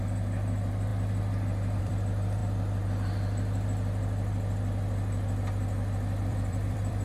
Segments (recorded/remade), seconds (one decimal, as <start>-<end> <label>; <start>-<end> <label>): 0.0-0.9 remade; 0.9-1.8 recorded; 1.8-2.4 remade; 2.4-6.3 recorded; 6.3-7.0 remade